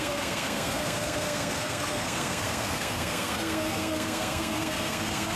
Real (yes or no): no